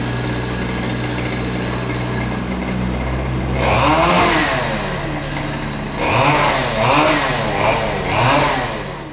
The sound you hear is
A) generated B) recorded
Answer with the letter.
B